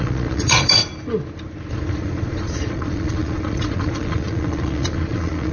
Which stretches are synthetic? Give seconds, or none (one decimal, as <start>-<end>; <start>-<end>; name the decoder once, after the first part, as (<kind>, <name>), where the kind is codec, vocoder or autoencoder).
0.0-0.8 (vocoder, Vocos); 1.7-5.5